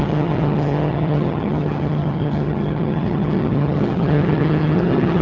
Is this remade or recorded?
remade